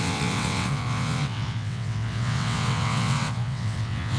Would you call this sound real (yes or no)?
no